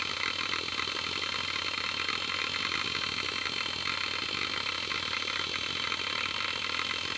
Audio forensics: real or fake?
real